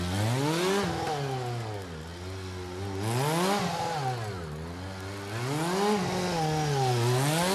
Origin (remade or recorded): recorded